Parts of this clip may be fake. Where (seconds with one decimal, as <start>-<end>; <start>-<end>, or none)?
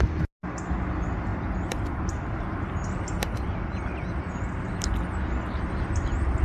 none